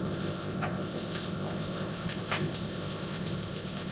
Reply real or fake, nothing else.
fake